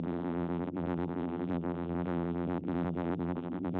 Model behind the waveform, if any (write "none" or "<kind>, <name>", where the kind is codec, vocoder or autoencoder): vocoder, BigVGAN v2